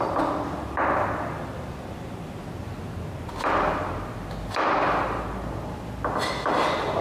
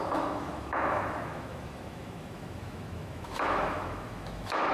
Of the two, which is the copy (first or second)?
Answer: second